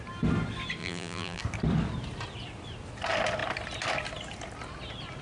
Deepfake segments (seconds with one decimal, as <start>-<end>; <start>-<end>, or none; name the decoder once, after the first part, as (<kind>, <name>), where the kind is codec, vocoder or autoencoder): 0.8-1.4 (vocoder, BigVGAN v2)